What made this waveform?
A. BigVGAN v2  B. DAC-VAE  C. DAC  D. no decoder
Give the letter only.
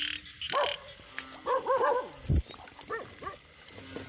D